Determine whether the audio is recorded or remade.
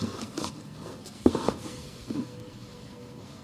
remade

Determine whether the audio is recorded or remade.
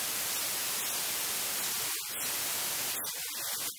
recorded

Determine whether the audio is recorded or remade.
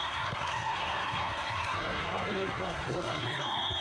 remade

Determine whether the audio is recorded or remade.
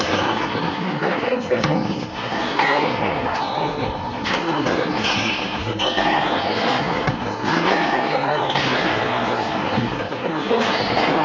remade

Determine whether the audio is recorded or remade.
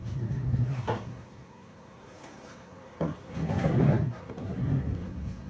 remade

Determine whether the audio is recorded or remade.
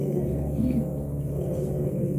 remade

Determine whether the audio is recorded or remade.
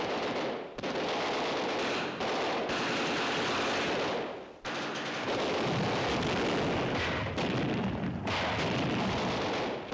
recorded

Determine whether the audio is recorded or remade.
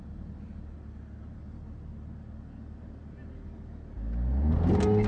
recorded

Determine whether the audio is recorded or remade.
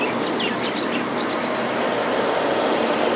recorded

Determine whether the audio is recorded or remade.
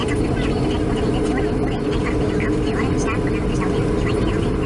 recorded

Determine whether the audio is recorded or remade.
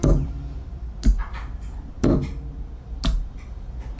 recorded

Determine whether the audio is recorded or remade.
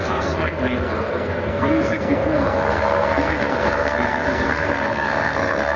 remade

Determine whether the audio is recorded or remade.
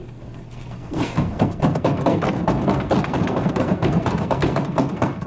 remade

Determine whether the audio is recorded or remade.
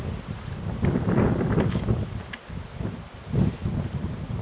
recorded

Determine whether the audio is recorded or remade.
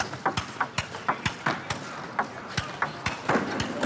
recorded